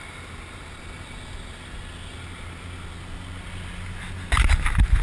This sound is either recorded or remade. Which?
recorded